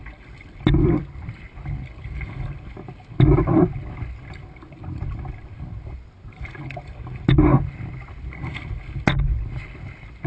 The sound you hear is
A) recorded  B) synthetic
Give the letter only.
A